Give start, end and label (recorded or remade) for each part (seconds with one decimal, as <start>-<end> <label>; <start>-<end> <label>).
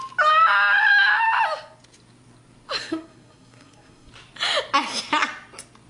0.0-2.8 recorded; 2.8-4.1 remade; 4.1-5.9 recorded